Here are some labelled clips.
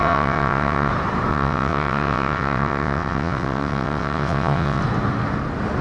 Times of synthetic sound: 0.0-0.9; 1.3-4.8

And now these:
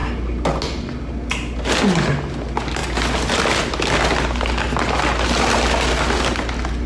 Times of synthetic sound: none

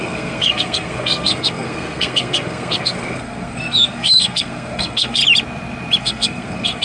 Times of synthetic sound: 0.0-5.2; 6.0-6.8

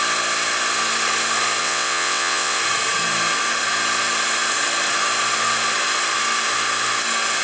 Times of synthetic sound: 1.6-2.6

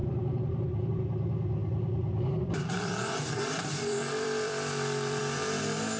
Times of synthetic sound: 1.6-5.2

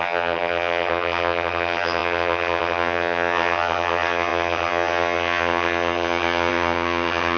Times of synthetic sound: 0.0-7.4